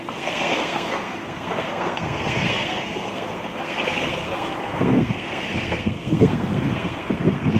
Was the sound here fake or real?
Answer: fake